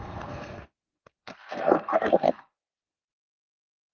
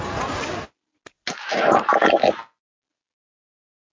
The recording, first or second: second